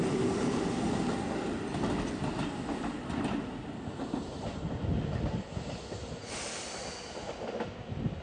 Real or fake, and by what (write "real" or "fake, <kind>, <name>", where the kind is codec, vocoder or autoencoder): real